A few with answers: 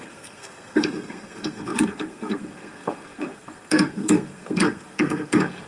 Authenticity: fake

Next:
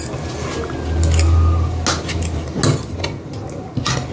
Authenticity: real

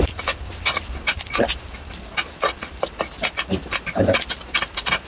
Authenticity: real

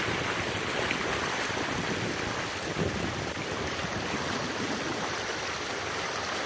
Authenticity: real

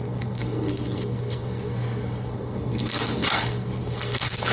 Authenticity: fake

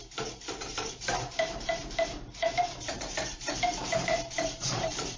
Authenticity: fake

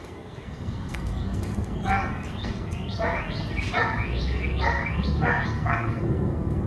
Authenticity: fake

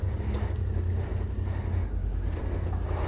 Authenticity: real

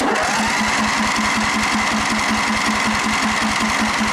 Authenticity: real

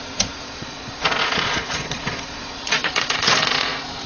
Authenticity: fake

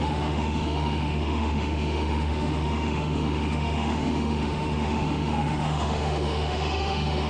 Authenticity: fake